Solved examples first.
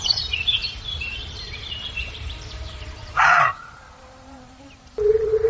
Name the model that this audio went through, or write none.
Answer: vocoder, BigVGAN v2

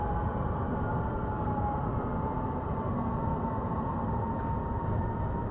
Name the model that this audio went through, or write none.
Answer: none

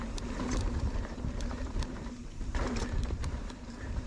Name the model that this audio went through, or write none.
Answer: vocoder, BigVGAN v2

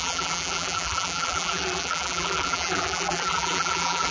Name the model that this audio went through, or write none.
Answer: vocoder, BigVGAN v2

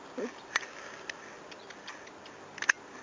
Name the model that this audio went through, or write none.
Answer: none